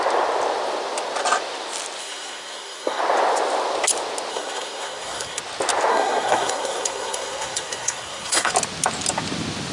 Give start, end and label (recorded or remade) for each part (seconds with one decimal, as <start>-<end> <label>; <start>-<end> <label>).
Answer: 0.0-2.0 recorded; 2.0-3.0 remade; 3.0-4.3 recorded; 4.3-5.4 remade; 5.4-5.9 recorded; 5.9-8.5 remade; 8.5-9.7 recorded